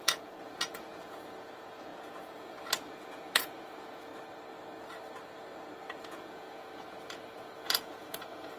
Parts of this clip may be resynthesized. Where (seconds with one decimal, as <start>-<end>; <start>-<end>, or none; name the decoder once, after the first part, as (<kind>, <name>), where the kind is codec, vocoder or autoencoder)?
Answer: 0.0-4.1 (vocoder, Vocos); 6.0-8.6